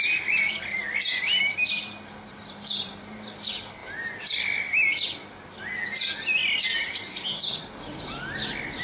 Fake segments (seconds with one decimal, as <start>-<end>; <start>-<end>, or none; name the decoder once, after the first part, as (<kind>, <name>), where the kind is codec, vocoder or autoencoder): none